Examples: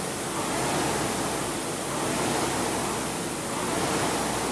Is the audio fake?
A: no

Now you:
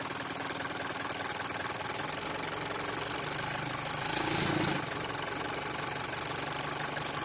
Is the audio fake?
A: no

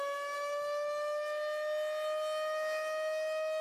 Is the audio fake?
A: no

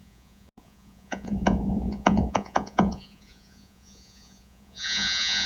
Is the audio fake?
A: yes